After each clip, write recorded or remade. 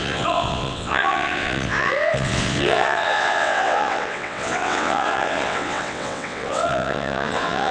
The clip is remade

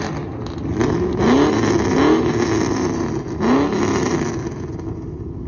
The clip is recorded